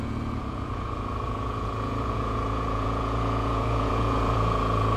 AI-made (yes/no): yes